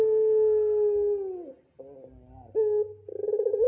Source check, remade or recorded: recorded